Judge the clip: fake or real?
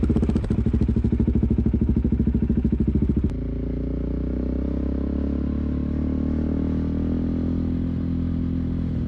real